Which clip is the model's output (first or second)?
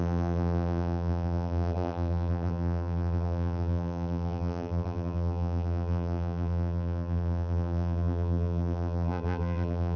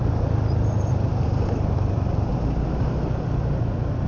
first